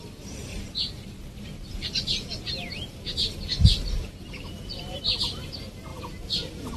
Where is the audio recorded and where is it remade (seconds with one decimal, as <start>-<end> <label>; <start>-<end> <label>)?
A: 0.0-0.5 remade; 0.5-2.9 recorded; 2.9-6.8 remade